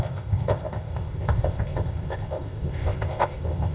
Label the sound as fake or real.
fake